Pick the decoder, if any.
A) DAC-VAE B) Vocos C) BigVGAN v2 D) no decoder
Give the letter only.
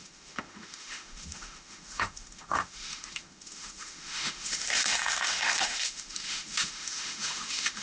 A